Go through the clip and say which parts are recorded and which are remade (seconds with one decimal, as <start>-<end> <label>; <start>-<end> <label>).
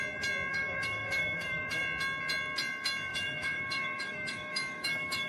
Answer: 0.0-0.5 recorded; 0.5-1.8 remade; 1.8-3.1 recorded; 3.1-5.3 remade